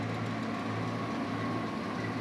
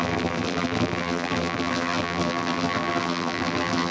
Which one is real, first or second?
first